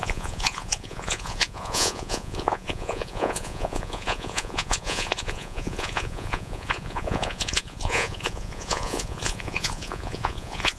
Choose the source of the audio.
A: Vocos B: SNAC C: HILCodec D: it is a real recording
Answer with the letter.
A